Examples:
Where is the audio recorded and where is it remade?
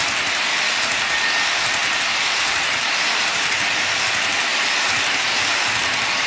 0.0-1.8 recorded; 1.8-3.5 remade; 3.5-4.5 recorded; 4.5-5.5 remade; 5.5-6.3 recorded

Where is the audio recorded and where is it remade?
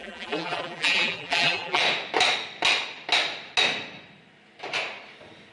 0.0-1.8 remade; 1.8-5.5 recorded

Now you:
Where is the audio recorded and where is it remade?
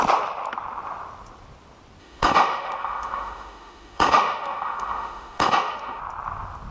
0.0-2.0 recorded; 2.0-6.0 remade; 6.0-6.7 recorded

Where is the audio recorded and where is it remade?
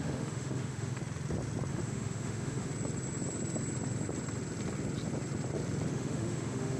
0.0-1.0 remade; 1.0-1.7 recorded; 1.7-2.7 remade; 2.7-5.9 recorded; 5.9-6.8 remade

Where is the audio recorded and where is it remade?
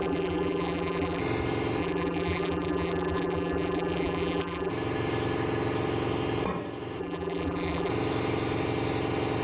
0.0-1.2 remade; 1.2-1.8 recorded; 1.8-4.7 remade; 4.7-7.0 recorded; 7.0-7.9 remade; 7.9-9.4 recorded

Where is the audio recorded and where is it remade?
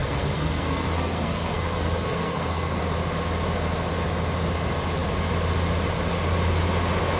0.0-2.8 remade; 2.8-7.2 recorded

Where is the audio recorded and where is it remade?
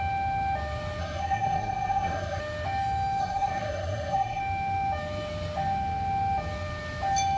0.0-1.0 recorded; 1.0-2.4 remade; 2.4-3.2 recorded; 3.2-4.4 remade; 4.4-7.4 recorded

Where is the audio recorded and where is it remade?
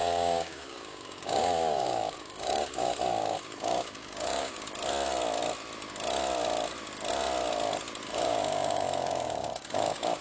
0.0-4.6 remade; 4.6-8.1 recorded; 8.1-10.2 remade